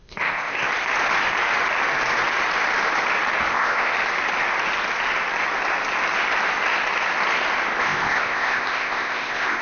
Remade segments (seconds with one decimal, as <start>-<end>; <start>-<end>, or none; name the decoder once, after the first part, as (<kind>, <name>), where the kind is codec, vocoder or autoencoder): 0.0-0.7 (codec, ZipCodec); 3.5-3.9; 7.8-9.6